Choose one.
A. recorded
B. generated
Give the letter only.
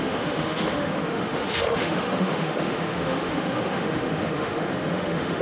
B